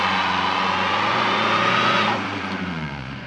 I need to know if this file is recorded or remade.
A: remade